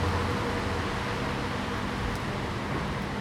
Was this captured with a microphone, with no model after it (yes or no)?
yes